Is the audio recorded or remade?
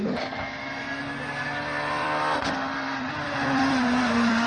remade